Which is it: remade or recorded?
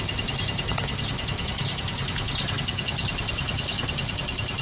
recorded